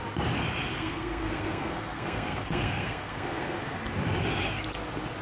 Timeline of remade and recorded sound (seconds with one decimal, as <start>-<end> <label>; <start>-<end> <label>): 0.0-0.7 recorded; 0.7-3.8 remade; 3.8-5.2 recorded